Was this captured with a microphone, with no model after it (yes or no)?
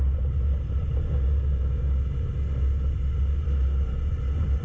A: yes